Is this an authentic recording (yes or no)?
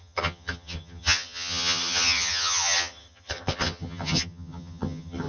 no